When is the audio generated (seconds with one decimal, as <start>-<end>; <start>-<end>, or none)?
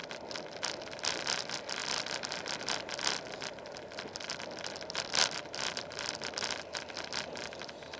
none